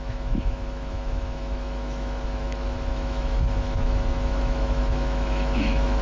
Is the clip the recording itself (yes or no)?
no